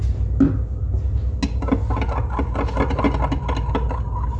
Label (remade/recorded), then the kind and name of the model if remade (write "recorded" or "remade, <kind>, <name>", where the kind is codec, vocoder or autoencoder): recorded